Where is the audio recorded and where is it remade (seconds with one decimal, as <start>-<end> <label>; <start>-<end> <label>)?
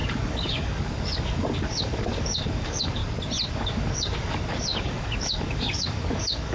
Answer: 0.0-3.0 remade; 3.0-3.5 recorded; 3.5-6.5 remade